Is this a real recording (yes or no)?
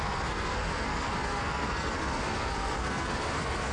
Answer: no